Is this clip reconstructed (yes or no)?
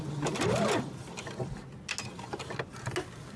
no